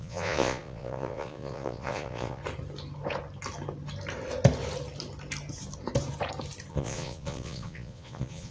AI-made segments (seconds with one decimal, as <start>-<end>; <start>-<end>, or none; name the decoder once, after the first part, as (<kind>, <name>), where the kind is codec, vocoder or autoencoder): 0.0-2.4 (vocoder, Vocos); 6.7-8.5